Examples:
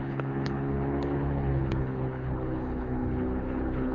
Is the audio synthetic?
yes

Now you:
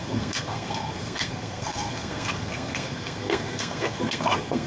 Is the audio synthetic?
yes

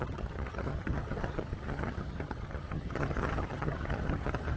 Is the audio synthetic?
yes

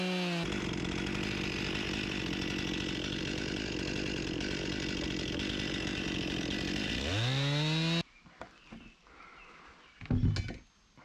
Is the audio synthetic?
no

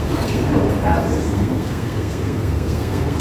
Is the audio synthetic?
yes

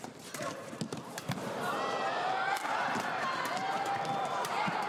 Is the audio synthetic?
no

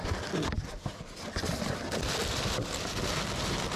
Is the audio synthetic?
no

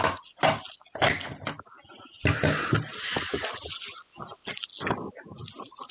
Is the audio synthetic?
no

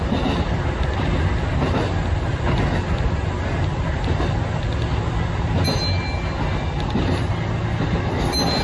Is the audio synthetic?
no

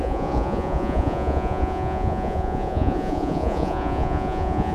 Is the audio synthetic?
yes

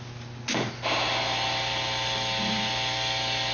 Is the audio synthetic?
no